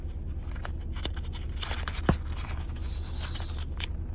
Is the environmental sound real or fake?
real